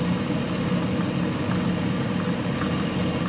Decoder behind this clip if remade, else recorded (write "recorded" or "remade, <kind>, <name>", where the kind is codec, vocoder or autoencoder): recorded